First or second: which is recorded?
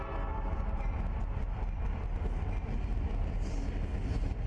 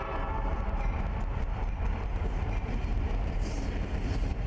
first